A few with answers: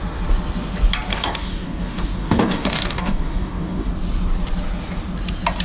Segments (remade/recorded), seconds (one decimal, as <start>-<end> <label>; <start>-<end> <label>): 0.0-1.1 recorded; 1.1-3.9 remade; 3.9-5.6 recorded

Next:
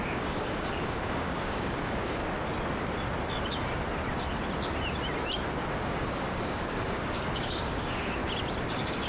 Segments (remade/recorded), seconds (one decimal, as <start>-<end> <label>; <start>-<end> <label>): 0.0-2.2 remade; 2.2-5.8 recorded; 5.8-8.2 remade; 8.2-8.7 recorded; 8.7-9.1 remade

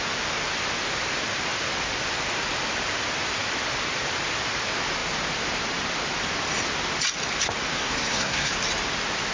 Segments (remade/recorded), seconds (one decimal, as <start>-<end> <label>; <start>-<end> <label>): 0.0-7.7 recorded; 7.7-8.5 remade; 8.5-9.3 recorded